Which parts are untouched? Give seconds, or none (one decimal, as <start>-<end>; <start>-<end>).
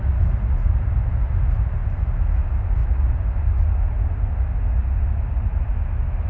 0.0-6.3